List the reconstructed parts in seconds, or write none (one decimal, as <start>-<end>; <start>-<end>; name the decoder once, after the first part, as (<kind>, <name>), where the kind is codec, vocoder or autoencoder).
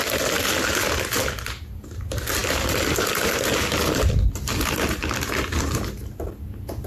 none